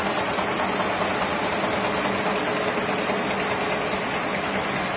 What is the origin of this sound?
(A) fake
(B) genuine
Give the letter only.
B